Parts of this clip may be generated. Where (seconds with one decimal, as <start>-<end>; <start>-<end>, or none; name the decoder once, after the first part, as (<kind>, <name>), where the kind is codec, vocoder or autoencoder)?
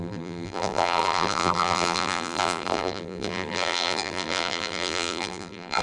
0.0-5.8 (vocoder, BigVGAN v2)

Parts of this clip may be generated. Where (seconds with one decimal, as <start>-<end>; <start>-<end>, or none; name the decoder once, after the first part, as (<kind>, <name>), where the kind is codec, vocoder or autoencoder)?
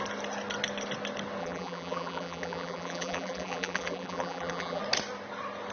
1.4-4.8 (vocoder, BigVGAN v2)